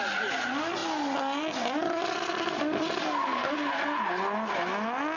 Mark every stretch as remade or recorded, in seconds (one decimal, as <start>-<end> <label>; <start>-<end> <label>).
0.0-5.2 recorded